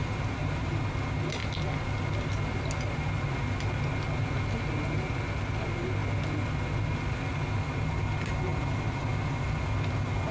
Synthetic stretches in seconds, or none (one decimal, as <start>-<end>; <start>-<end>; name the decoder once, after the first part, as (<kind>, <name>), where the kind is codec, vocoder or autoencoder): 0.0-0.7 (vocoder, BigVGAN v2)